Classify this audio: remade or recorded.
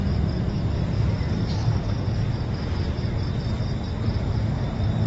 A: recorded